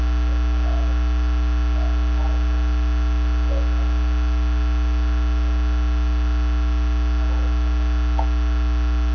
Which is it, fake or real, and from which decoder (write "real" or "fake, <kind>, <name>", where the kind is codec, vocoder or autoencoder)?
real